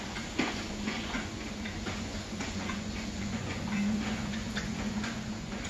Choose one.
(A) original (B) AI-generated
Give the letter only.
B